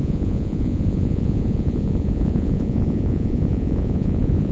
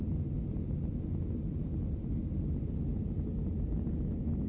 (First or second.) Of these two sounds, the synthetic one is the first